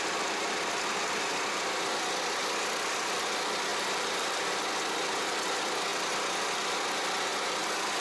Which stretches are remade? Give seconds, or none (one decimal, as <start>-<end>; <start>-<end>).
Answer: 3.7-4.5